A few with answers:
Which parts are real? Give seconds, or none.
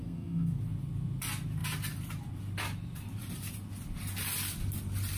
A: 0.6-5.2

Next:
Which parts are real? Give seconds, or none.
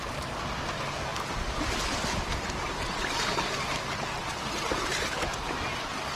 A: 0.0-6.2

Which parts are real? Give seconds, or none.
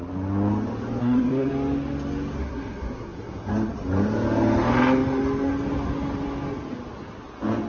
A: 0.0-1.0; 1.5-2.4; 3.5-7.7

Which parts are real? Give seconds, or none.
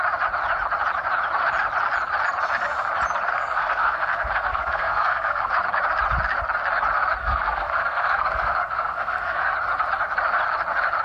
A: 0.0-3.3; 5.5-7.2; 9.5-11.0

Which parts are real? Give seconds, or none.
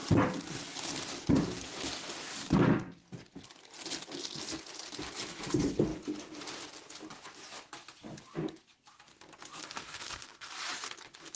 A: 0.0-9.6; 10.5-11.4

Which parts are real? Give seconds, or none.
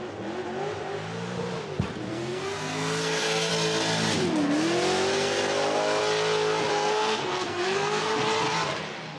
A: 0.0-2.1; 3.5-5.1; 6.0-6.7; 8.1-9.2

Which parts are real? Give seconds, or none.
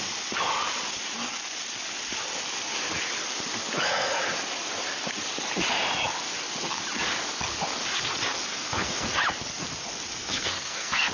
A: 0.0-8.5; 9.2-10.2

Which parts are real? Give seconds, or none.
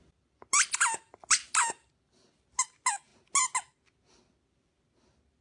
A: 0.0-5.4